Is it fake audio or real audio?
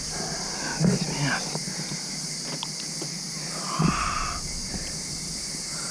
real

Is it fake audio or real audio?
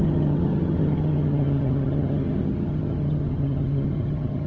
fake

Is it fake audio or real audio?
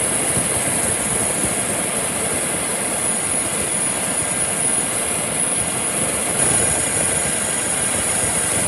real